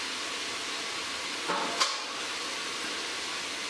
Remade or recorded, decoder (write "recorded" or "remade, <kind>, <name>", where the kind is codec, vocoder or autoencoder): recorded